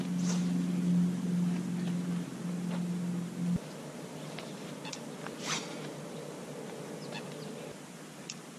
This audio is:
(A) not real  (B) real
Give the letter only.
B